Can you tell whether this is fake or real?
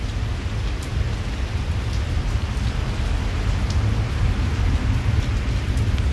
real